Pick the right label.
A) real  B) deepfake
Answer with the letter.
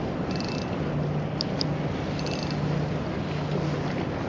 A